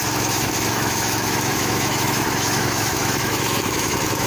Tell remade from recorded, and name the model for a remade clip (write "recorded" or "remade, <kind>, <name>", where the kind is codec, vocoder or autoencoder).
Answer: remade, autoencoder, DAC-VAE